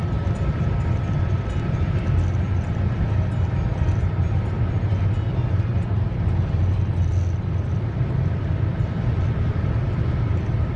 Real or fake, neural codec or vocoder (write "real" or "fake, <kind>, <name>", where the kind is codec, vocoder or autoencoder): fake, vocoder, BigVGAN v2